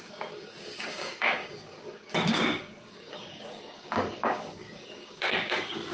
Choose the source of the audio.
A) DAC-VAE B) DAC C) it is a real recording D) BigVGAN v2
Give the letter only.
B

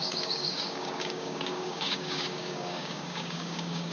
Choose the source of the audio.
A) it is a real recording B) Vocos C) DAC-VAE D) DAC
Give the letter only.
D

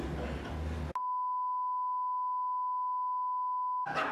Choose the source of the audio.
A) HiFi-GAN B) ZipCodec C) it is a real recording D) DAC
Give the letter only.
C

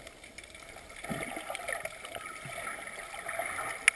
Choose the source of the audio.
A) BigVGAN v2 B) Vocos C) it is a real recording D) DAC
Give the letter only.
C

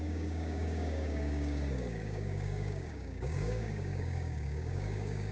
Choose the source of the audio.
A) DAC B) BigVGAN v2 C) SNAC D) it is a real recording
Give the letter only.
A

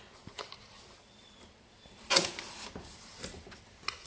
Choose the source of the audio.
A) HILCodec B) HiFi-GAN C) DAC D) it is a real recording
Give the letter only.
D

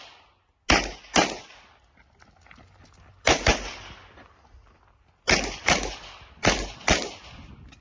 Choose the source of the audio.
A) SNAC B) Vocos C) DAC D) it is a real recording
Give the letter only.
D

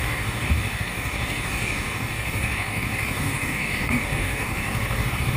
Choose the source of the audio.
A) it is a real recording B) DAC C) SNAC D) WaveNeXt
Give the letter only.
B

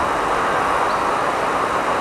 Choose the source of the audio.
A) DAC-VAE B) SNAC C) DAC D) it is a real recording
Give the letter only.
D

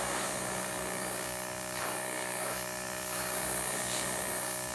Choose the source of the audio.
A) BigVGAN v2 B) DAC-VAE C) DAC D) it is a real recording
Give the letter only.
C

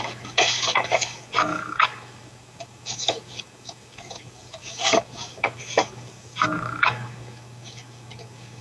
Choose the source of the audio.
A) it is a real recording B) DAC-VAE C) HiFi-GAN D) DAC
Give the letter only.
D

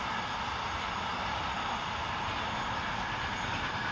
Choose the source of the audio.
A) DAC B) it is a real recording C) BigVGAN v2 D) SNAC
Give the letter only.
B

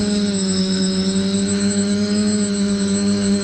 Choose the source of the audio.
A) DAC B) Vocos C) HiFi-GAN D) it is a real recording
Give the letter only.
A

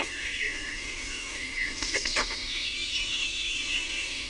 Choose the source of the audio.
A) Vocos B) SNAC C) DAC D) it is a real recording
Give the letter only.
C